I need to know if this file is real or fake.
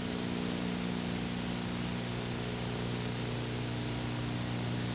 real